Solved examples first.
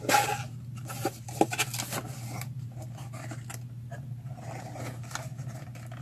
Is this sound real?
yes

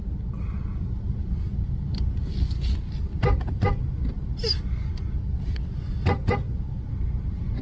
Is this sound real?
yes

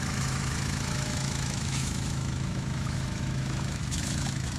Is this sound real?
no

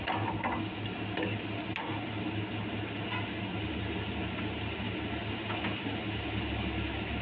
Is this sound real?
yes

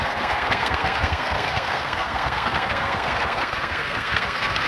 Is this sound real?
no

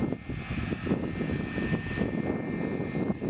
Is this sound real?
yes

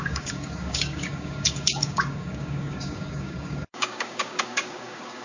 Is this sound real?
no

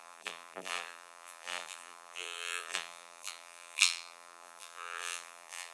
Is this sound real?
no